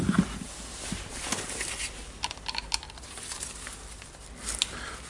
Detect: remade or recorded recorded